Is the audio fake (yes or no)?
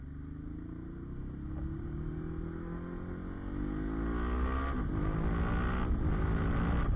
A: no